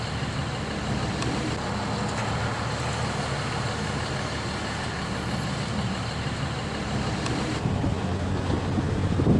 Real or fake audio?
real